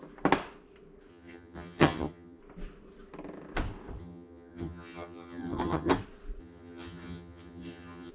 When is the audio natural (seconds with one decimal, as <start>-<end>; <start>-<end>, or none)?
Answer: 0.0-1.1; 2.4-4.0; 5.9-6.4